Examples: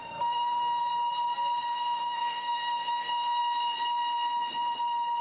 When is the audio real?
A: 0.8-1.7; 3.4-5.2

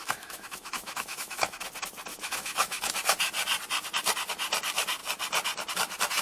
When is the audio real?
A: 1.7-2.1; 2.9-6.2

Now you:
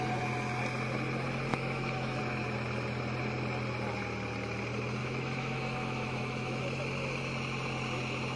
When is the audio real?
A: 0.0-1.5; 2.2-5.0; 6.6-8.4

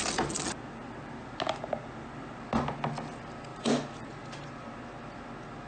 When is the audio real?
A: 0.0-5.7

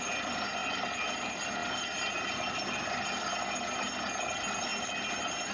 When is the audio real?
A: 0.0-5.5

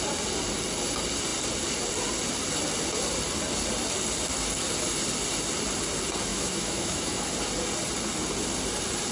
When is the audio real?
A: 0.0-6.3; 7.3-9.1

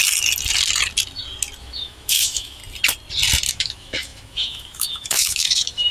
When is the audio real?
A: 0.0-1.6; 2.6-3.5